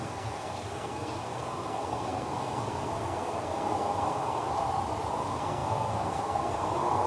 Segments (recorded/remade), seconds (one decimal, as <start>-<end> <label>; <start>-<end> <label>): 0.0-4.5 remade; 4.5-5.1 recorded; 5.1-7.1 remade